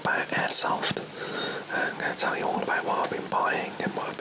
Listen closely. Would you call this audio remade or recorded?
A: recorded